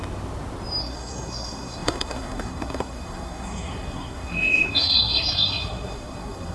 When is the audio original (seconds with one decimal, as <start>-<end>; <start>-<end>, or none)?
0.0-0.8